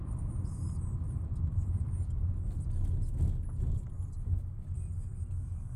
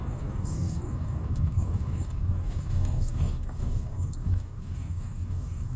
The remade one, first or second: second